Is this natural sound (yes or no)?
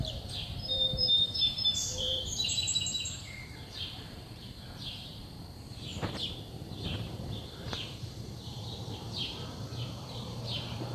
no